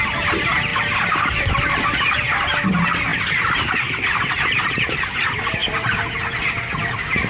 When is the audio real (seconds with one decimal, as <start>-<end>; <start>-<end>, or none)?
0.0-7.3